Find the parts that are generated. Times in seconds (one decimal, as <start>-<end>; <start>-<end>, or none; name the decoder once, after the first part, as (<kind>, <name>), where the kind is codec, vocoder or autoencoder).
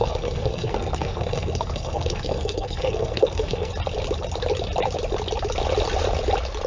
0.0-3.7 (codec, SNAC)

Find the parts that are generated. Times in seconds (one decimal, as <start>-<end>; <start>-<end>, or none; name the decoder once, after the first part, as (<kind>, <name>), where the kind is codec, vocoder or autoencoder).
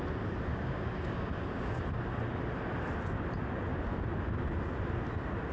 0.5-1.8 (codec, DAC)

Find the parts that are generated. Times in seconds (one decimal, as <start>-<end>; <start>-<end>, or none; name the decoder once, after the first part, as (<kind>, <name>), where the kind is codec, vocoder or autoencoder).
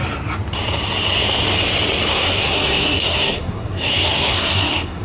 2.1-5.0 (codec, SNAC)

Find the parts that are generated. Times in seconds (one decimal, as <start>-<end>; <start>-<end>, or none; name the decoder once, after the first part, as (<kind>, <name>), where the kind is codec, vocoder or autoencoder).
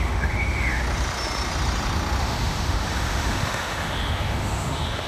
0.0-0.8 (autoencoder, DAC-VAE); 2.2-5.1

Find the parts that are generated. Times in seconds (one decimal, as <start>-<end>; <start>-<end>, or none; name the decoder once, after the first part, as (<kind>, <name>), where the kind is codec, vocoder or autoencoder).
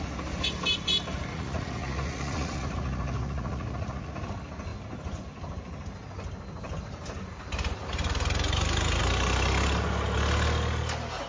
1.3-4.1 (vocoder, Vocos)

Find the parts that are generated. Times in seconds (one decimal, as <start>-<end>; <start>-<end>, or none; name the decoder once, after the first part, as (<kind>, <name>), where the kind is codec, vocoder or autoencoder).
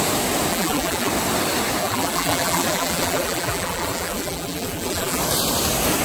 0.5-1.1 (vocoder, BigVGAN v2); 1.8-5.2